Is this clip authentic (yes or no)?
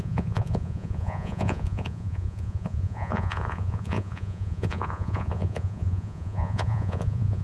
no